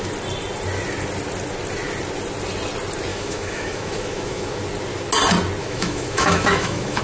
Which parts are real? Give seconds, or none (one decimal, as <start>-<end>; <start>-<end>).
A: 0.0-3.1; 4.6-5.6